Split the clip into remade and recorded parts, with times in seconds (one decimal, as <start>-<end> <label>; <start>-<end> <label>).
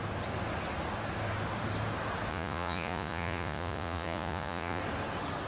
0.0-2.3 recorded; 2.3-4.8 remade; 4.8-5.5 recorded